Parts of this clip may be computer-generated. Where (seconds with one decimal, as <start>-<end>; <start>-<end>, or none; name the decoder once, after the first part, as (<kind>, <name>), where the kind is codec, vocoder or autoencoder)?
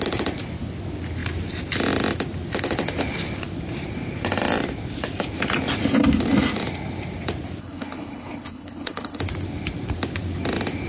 7.6-9.2 (codec, HILCodec)